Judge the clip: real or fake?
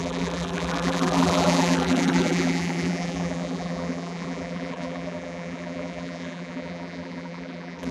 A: fake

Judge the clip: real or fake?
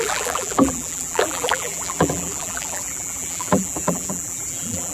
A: fake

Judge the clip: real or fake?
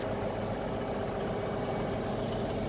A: real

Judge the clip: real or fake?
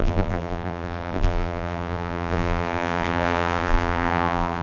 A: fake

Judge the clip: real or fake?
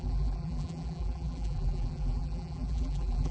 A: fake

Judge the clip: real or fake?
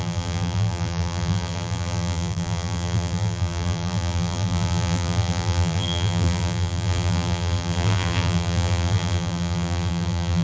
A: fake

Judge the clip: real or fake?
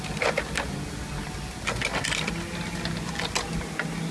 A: real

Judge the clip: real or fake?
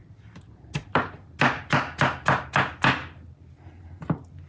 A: real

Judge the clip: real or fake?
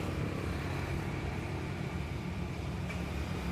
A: fake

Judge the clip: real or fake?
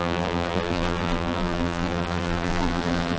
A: fake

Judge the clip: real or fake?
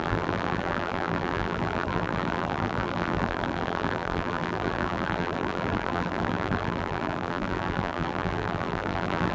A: fake